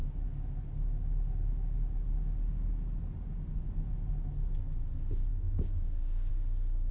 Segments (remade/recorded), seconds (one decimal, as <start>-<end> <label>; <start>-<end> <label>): 0.0-5.3 recorded; 5.3-6.3 remade; 6.3-6.9 recorded